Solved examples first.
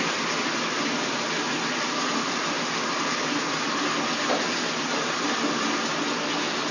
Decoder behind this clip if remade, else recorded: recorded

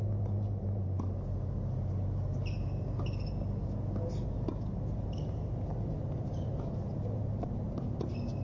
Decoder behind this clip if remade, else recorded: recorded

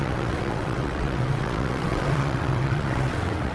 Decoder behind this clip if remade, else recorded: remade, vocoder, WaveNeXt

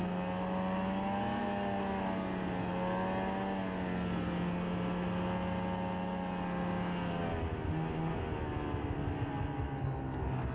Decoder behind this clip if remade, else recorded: recorded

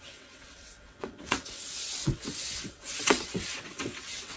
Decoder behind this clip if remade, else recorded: remade, vocoder, WaveNeXt